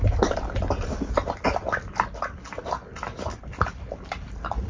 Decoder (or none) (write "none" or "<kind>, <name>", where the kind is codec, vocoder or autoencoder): none